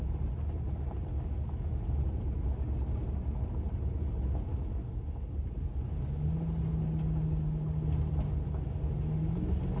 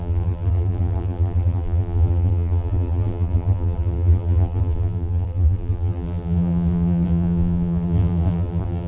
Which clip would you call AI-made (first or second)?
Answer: second